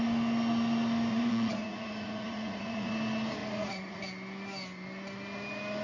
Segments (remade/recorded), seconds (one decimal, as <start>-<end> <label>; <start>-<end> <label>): 0.0-1.1 recorded; 1.1-2.9 remade; 2.9-3.4 recorded; 3.4-4.0 remade; 4.0-5.8 recorded